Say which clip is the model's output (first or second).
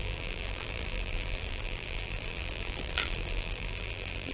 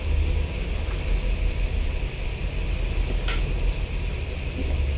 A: first